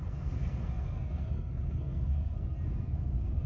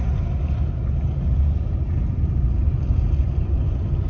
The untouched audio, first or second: second